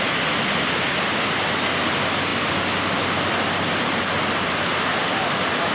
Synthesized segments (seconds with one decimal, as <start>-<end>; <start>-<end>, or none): none